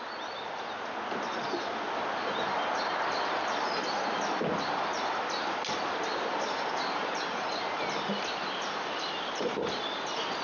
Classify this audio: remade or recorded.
recorded